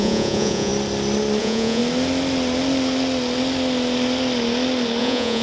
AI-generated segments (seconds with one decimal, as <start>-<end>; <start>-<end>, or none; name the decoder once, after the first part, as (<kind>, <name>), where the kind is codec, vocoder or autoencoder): 0.0-0.7 (vocoder, Vocos); 1.4-1.8; 5.0-5.4